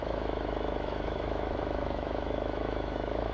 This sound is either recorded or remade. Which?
remade